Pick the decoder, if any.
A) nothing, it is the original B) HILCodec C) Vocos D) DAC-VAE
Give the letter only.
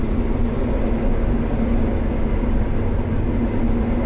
A